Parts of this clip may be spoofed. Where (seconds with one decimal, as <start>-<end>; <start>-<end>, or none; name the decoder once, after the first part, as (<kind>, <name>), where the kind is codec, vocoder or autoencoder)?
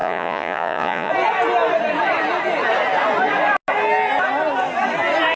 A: 0.0-1.1 (vocoder, Vocos)